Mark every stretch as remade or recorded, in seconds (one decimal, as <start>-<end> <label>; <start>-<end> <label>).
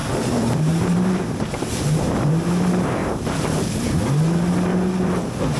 0.0-2.3 remade; 2.3-3.0 recorded; 3.0-3.9 remade; 3.9-4.7 recorded; 4.7-5.6 remade